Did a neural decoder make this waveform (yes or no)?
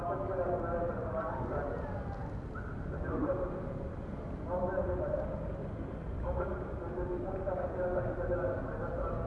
no